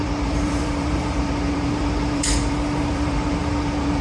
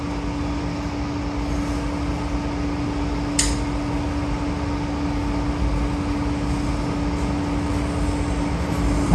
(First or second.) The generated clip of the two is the first